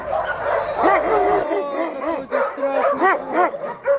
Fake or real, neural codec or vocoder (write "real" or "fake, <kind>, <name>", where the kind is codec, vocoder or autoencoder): real